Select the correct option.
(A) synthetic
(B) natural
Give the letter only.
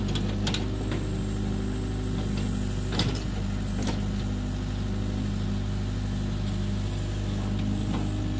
B